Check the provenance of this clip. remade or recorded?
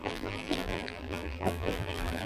remade